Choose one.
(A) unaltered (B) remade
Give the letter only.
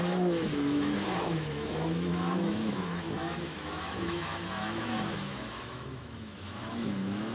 B